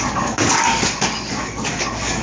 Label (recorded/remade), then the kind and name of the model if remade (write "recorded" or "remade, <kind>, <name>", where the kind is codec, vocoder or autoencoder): remade, codec, DAC